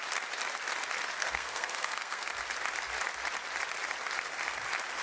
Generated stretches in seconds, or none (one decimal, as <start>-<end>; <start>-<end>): 1.2-2.3